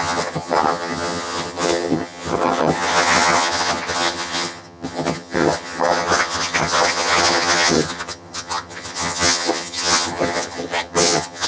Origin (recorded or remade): remade